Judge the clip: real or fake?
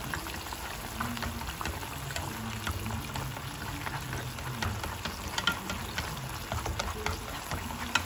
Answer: real